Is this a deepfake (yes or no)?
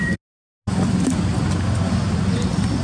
no